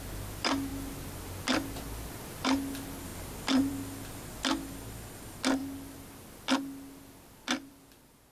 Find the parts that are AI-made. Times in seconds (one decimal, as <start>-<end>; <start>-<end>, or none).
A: none